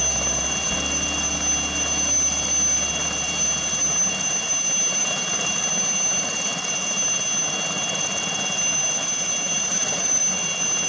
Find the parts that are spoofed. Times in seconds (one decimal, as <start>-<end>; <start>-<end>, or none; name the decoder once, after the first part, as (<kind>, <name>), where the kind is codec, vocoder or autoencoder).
5.0-5.7 (vocoder, BigVGAN v2); 9.7-10.2

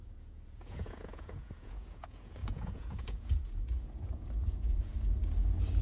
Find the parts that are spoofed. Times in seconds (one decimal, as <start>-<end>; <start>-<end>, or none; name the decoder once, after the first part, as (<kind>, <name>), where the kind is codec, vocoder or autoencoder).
0.0-4.9 (vocoder, Vocos)